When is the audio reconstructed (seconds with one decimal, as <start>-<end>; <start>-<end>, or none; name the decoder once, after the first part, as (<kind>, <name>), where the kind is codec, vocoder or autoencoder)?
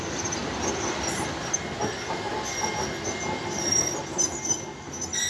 none